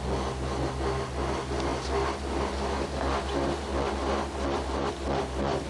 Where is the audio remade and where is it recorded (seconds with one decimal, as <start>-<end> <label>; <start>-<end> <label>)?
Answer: 0.0-5.7 recorded